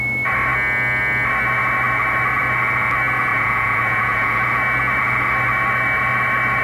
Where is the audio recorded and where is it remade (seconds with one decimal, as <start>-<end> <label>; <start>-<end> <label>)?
0.0-3.3 recorded; 3.3-4.4 remade; 4.4-6.6 recorded

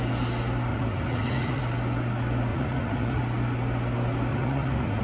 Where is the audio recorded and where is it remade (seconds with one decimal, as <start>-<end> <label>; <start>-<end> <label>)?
0.0-0.7 recorded; 0.7-1.6 remade; 1.6-2.5 recorded; 2.5-3.2 remade; 3.2-4.3 recorded; 4.3-5.0 remade

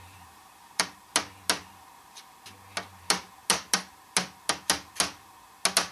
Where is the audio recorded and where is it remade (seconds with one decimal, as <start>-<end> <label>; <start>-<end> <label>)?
0.0-1.0 remade; 1.0-5.9 recorded